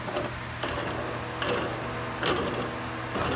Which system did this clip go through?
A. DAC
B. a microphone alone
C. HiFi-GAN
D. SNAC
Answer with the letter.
B